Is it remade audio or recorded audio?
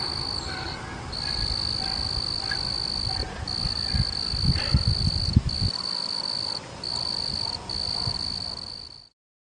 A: recorded